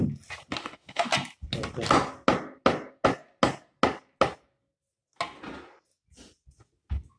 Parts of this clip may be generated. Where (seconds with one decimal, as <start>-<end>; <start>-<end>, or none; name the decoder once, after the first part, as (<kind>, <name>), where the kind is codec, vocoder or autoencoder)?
0.6-1.1 (autoencoder, DAC-VAE)